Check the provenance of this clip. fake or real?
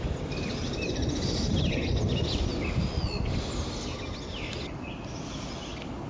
real